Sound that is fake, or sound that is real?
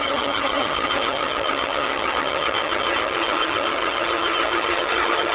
fake